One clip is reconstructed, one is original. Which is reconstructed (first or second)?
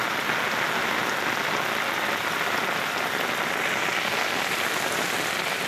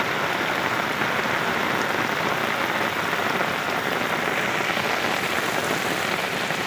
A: second